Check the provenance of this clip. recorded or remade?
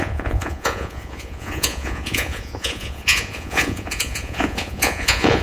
remade